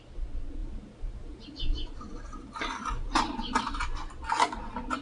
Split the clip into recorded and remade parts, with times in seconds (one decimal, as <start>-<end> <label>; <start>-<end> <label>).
0.0-0.6 recorded; 0.6-3.6 remade; 3.6-5.0 recorded